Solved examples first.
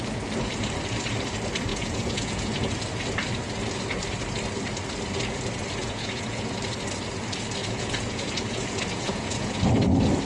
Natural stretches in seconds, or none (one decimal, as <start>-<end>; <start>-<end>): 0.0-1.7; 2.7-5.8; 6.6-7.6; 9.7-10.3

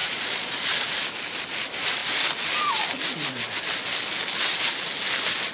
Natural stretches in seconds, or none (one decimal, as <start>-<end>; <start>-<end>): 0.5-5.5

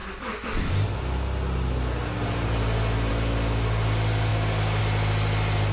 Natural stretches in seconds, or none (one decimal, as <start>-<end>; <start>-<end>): 0.0-5.7

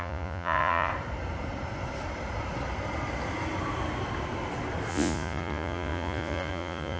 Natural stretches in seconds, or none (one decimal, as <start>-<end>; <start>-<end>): 0.9-4.9

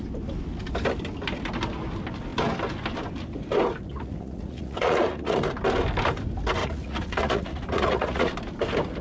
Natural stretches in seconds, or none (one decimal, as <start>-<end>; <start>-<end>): 0.0-3.9; 5.4-6.6; 8.3-9.0